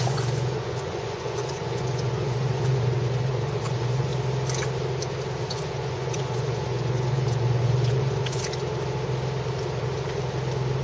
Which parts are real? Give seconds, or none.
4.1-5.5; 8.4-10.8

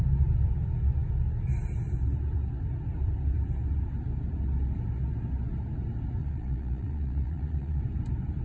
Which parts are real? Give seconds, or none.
0.0-6.2; 7.8-8.4

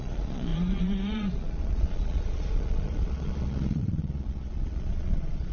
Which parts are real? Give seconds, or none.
none

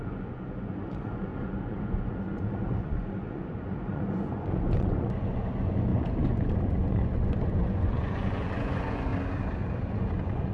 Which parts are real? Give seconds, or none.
9.1-9.9

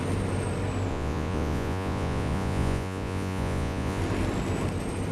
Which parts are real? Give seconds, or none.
0.0-0.9; 4.0-5.1

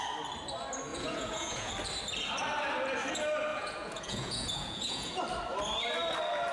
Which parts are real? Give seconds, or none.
0.0-0.9; 1.7-3.5; 5.2-6.5